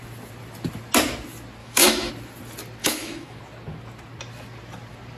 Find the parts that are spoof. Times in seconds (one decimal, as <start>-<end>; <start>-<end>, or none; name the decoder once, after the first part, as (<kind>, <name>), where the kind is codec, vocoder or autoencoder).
1.6-2.1 (autoencoder, DAC-VAE); 2.8-3.4